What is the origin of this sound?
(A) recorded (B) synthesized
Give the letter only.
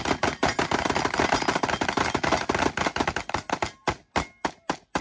A